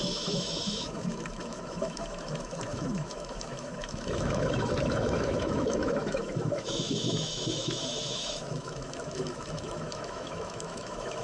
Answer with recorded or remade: remade